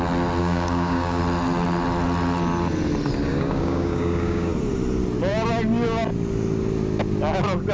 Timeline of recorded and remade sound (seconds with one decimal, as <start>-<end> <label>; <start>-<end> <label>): 0.0-0.4 recorded; 0.4-1.2 remade; 1.2-3.3 recorded; 3.3-4.5 remade; 4.5-7.7 recorded